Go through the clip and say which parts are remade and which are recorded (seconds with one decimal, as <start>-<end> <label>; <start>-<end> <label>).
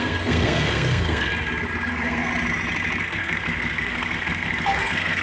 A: 0.0-1.3 remade; 1.3-1.9 recorded; 1.9-2.3 remade; 2.3-3.0 recorded; 3.0-5.2 remade